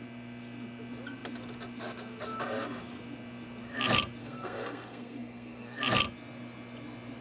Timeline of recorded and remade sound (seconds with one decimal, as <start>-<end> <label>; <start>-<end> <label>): 0.0-4.2 recorded; 4.2-5.8 remade; 5.8-7.2 recorded